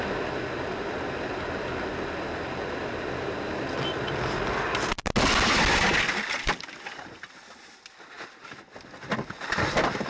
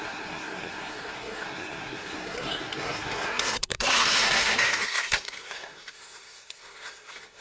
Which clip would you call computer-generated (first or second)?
second